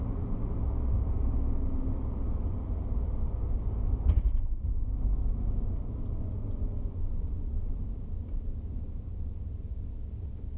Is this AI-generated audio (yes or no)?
no